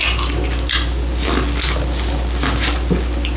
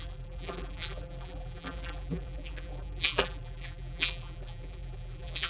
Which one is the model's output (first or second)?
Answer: second